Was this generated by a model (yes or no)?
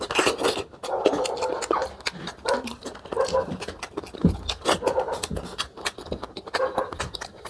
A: no